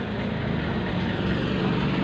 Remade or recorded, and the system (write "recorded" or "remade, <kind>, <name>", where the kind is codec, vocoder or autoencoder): recorded